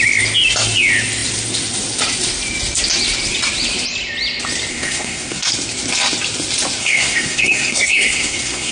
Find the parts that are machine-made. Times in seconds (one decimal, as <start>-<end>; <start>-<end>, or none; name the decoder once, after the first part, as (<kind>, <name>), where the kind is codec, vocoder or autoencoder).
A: 4.7-5.5 (codec, SNAC); 6.8-8.7